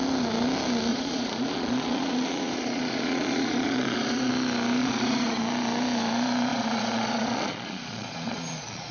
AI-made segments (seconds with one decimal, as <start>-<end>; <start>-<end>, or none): 0.9-4.3; 4.8-5.4; 6.5-8.9